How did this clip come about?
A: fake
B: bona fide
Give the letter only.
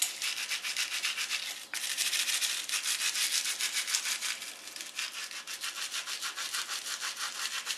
B